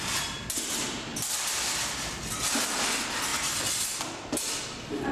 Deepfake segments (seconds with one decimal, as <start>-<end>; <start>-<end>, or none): none